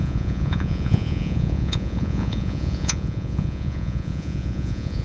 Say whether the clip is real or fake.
fake